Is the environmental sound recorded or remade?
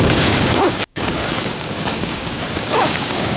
remade